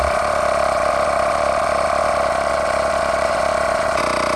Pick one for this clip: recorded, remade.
remade